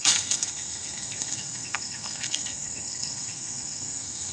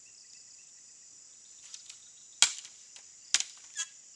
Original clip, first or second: second